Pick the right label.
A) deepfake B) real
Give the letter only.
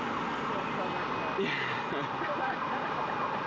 B